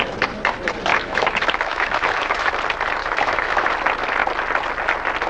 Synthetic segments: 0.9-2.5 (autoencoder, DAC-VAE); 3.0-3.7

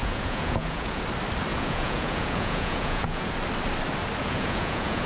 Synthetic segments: 0.0-1.0 (vocoder, Vocos); 1.5-3.3; 4.2-5.1

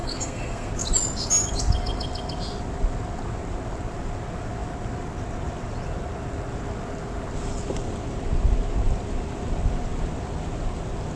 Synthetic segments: 0.0-0.7 (codec, SNAC)

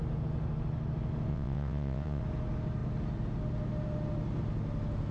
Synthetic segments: 1.3-2.2 (vocoder, WaveNeXt)

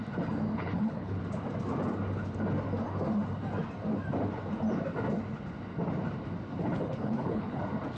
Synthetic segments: 0.6-1.2 (codec, HILCodec); 6.6-7.6

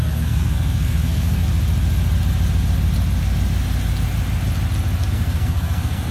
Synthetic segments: 0.0-1.4 (codec, SNAC); 5.1-6.1

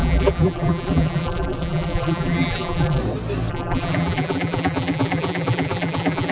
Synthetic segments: 0.0-3.0 (vocoder, BigVGAN v2); 3.5-6.3